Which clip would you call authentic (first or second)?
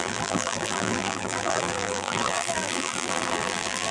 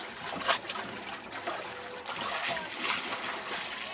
second